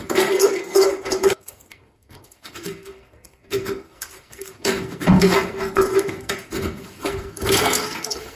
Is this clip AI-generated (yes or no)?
yes